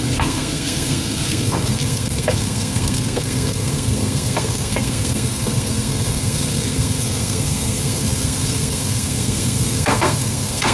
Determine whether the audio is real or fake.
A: fake